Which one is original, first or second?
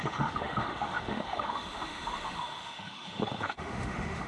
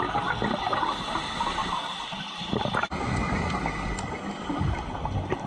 second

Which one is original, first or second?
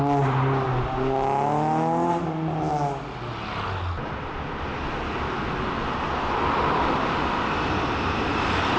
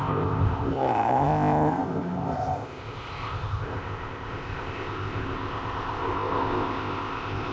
first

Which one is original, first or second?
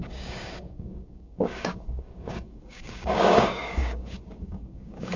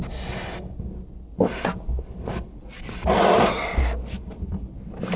second